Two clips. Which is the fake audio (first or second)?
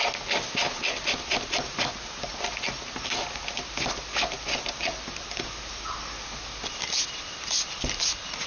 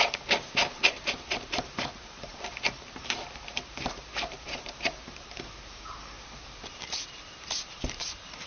second